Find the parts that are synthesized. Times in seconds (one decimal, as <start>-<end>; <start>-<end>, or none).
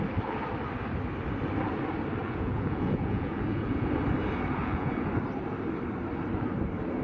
2.2-3.9; 4.6-5.1